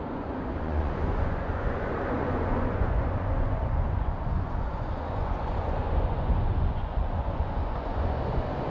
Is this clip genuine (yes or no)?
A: no